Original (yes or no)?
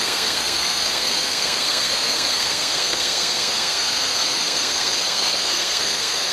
no